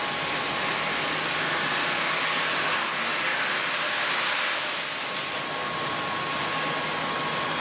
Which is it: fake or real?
real